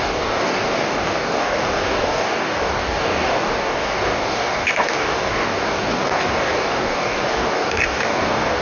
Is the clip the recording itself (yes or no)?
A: no